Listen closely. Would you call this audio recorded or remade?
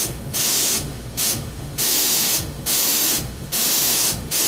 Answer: remade